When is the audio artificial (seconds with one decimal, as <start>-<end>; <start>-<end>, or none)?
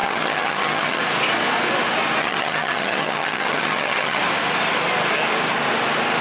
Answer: 0.0-1.0; 2.2-4.2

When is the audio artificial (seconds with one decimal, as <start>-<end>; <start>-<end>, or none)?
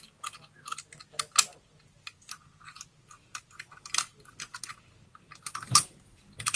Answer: none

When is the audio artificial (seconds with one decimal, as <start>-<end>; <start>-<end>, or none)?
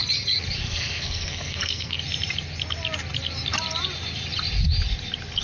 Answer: 0.6-2.0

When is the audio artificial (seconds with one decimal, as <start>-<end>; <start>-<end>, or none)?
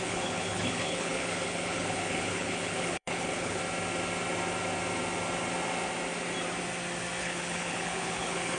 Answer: 0.0-3.6; 7.2-8.6